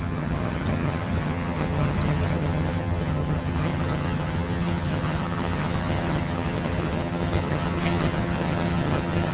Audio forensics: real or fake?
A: fake